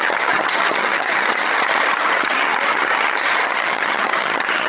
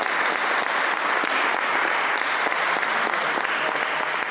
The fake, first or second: first